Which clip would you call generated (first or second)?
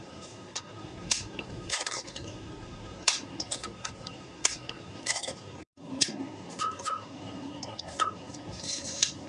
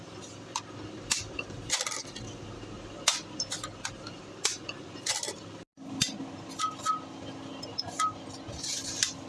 first